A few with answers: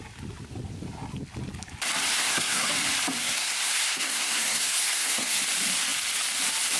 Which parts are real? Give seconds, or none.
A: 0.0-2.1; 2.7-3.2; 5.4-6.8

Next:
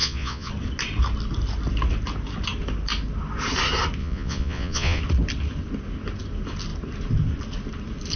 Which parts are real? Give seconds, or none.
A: 0.5-4.0; 5.0-8.2

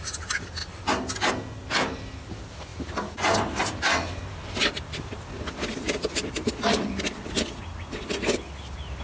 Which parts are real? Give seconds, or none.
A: 0.0-9.0

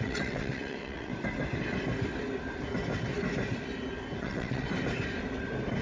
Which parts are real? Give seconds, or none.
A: 1.1-4.2; 4.7-5.8

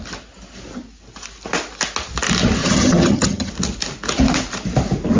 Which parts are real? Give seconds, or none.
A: 0.0-2.6; 3.5-5.2

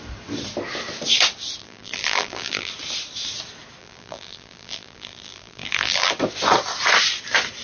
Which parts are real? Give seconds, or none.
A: 0.0-1.6; 2.7-3.8; 6.1-7.6

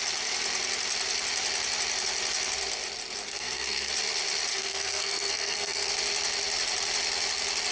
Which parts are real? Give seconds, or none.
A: 0.0-3.3; 3.9-4.5; 5.9-7.7